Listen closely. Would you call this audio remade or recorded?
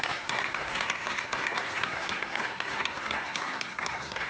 remade